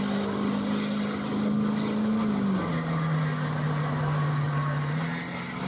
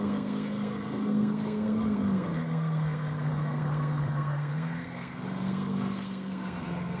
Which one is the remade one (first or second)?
second